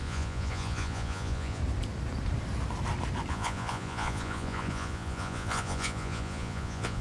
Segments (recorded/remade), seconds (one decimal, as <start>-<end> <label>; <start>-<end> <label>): 0.0-1.6 remade; 1.6-3.3 recorded; 3.3-7.0 remade